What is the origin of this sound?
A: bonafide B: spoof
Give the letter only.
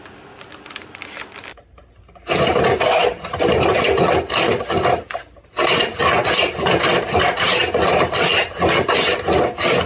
A